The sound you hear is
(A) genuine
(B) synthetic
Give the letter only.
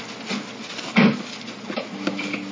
A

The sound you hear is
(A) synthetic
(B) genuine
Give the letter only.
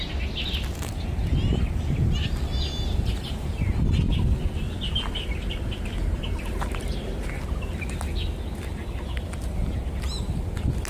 B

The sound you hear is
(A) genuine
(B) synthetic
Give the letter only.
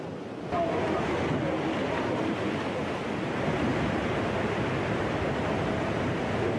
A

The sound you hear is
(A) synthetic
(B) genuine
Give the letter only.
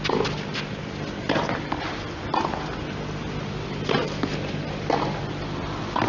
B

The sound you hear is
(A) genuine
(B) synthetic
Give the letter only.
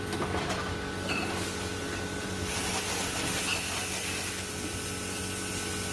A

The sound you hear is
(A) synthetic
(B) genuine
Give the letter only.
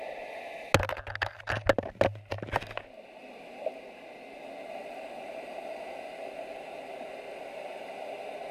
B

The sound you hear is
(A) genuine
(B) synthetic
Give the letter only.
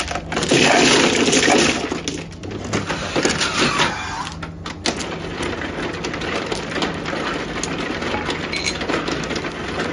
A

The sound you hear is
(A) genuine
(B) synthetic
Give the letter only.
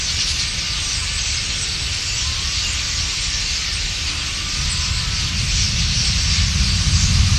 A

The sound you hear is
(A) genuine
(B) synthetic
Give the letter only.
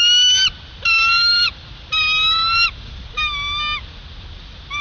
A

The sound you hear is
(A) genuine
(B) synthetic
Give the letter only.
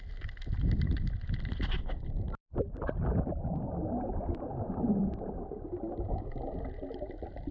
B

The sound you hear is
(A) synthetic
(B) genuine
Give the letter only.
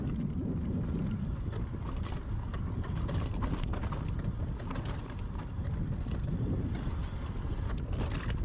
B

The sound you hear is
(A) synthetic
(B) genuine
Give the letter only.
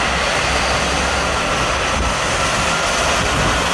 B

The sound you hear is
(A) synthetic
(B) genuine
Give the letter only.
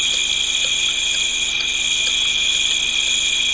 B